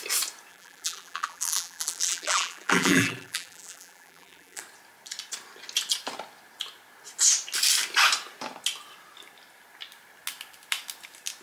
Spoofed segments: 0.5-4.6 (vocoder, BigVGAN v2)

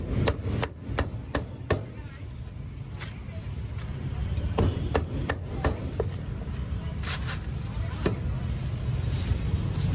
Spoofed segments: 0.8-2.4 (vocoder, BigVGAN v2); 4.2-7.0